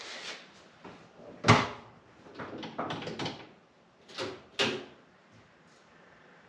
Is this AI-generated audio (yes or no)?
no